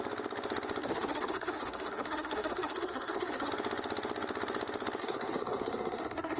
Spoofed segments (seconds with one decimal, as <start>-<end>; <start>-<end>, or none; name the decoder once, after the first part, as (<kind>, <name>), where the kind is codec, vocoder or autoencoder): 0.8-3.5 (codec, SNAC); 5.0-6.4